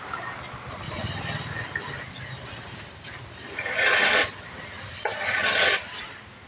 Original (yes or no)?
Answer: yes